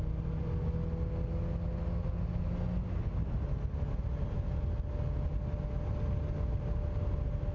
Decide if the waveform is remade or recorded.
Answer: recorded